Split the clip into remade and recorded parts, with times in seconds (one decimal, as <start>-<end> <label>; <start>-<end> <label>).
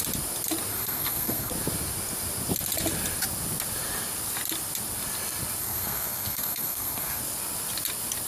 0.0-0.7 recorded; 0.7-1.5 remade; 1.5-5.6 recorded; 5.6-7.2 remade; 7.2-8.3 recorded